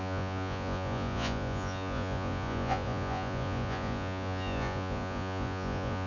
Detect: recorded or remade remade